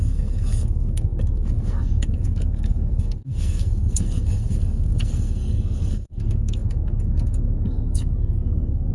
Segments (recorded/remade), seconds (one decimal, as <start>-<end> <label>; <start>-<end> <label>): 0.0-8.9 remade